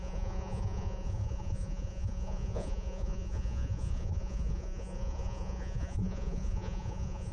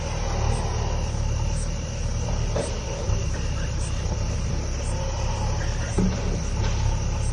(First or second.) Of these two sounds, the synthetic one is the first